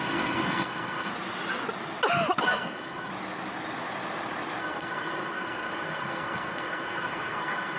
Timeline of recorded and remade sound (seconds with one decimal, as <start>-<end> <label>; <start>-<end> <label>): 0.0-1.1 remade; 1.1-2.4 recorded; 2.4-3.1 remade; 3.1-4.6 recorded; 4.6-7.8 remade